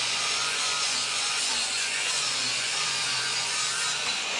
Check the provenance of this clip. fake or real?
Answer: fake